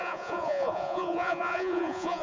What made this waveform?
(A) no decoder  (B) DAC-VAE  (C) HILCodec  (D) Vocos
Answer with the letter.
D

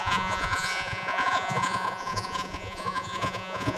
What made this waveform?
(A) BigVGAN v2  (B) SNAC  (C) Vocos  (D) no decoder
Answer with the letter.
C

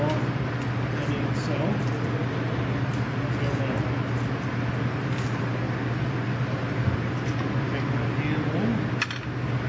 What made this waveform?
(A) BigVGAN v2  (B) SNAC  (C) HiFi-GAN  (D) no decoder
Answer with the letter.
D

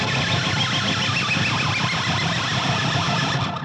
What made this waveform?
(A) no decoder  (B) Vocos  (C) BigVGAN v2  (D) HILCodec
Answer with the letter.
A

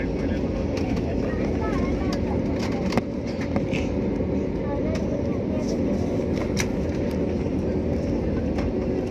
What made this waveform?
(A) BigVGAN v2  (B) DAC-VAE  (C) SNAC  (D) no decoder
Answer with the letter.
D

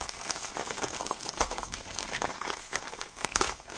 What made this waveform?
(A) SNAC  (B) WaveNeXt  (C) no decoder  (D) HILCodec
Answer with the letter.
A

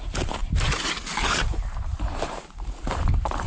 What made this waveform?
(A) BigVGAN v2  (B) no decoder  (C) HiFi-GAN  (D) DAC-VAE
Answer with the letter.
A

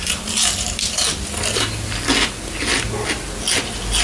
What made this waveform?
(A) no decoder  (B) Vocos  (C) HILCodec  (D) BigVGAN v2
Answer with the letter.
A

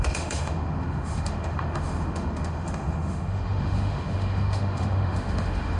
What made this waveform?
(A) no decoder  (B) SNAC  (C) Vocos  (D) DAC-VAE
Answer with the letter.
D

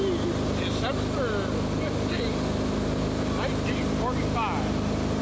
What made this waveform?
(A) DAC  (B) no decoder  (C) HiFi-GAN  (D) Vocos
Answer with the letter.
B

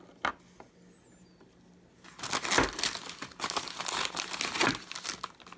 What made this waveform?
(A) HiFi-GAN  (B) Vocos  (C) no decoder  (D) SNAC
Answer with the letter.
C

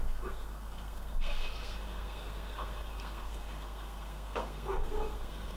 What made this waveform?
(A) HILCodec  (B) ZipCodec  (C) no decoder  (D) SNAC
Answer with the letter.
D